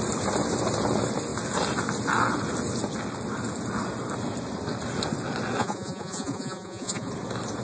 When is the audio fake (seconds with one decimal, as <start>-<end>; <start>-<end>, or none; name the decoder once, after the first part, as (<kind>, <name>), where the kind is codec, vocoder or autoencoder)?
5.6-7.1 (vocoder, Vocos)